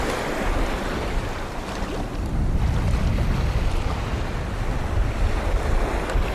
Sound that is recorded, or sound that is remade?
recorded